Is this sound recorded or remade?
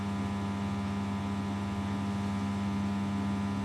recorded